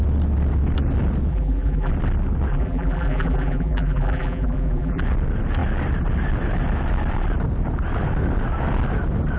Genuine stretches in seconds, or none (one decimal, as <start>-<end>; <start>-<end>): 0.0-1.3; 1.9-2.5; 5.0-9.4